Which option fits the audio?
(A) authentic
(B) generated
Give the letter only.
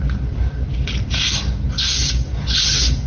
A